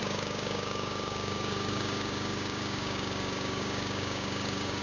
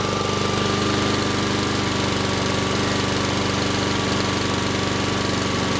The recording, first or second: second